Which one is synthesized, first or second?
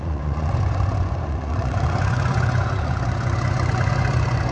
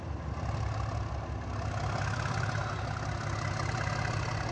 first